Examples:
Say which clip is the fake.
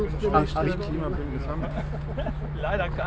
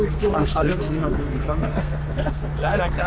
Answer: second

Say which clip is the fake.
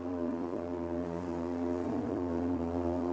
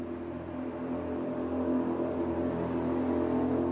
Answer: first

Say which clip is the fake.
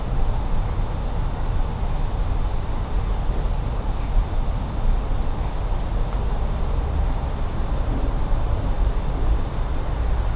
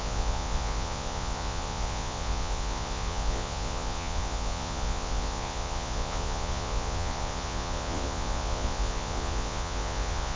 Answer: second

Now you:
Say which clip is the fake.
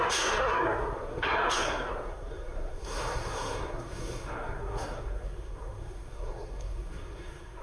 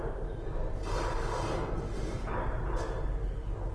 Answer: first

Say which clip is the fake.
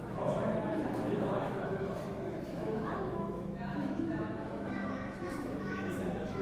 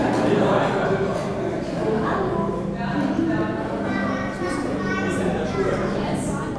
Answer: first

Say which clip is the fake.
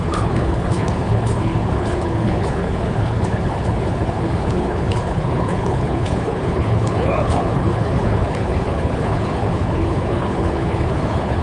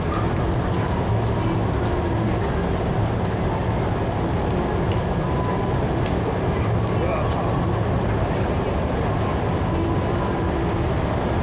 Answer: first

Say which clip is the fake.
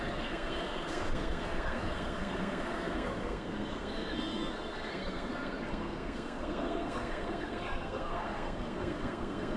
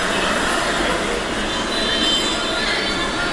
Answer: first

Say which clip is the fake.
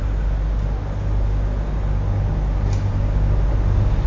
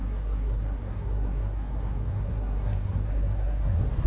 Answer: second